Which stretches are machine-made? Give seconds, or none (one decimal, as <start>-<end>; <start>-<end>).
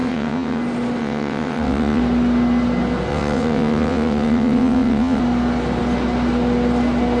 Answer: 0.0-0.6; 1.0-2.0; 3.1-5.2